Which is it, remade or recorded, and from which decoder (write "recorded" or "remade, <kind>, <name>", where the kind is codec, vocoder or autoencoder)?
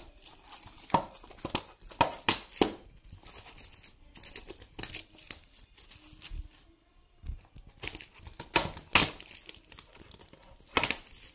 recorded